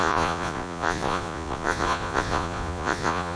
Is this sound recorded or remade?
remade